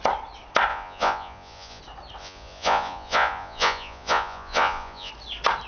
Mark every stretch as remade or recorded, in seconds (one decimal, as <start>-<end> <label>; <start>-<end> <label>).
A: 0.0-0.7 recorded; 0.7-1.8 remade; 1.8-2.2 recorded; 2.2-5.1 remade; 5.1-5.7 recorded